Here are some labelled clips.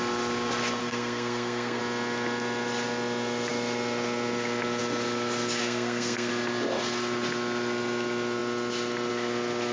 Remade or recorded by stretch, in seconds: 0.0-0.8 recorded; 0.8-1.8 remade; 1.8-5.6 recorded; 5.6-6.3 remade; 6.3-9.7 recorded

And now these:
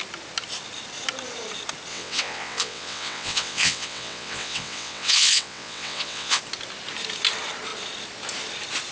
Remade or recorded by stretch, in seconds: 0.0-1.9 recorded; 1.9-6.4 remade; 6.4-8.9 recorded

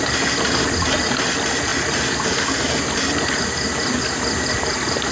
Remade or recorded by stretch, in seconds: 0.0-5.1 recorded

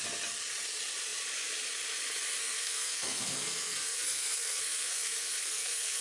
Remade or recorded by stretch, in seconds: 0.0-2.4 recorded; 2.4-6.0 remade

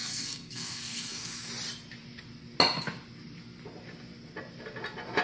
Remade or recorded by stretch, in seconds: 0.0-1.5 remade; 1.5-5.2 recorded

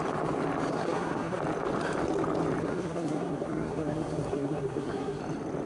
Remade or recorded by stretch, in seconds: 0.0-0.7 recorded; 0.7-1.4 remade; 1.4-2.6 recorded; 2.6-5.2 remade; 5.2-5.7 recorded